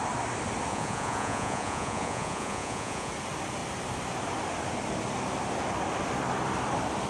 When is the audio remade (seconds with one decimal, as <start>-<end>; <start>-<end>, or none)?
0.7-3.1